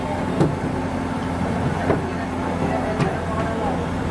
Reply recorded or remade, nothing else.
recorded